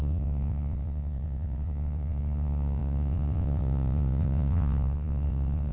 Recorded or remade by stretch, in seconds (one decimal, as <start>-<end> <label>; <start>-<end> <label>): 0.0-5.7 remade